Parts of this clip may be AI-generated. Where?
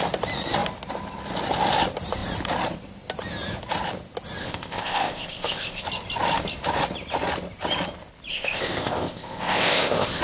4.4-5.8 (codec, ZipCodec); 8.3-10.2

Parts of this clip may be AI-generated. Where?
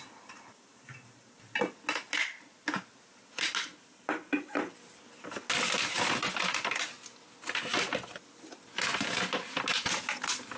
none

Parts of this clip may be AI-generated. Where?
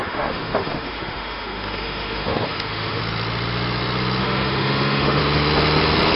0.0-3.0 (autoencoder, DAC-VAE); 4.2-5.2